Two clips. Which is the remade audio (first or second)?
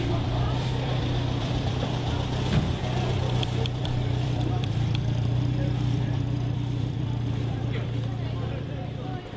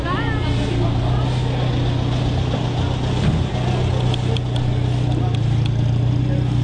first